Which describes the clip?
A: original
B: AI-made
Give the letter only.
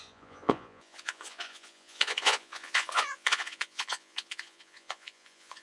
B